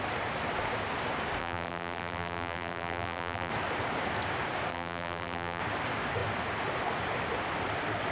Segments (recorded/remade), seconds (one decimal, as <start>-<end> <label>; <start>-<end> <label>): 0.0-1.4 recorded; 1.4-3.5 remade; 3.5-4.7 recorded; 4.7-5.6 remade; 5.6-8.1 recorded